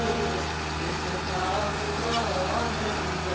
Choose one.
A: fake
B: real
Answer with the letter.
B